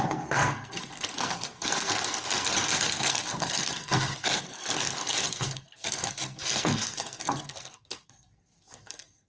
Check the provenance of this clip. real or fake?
fake